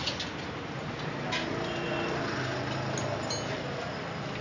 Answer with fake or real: real